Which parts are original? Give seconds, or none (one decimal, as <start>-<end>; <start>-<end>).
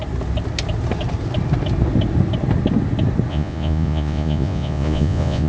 0.0-3.3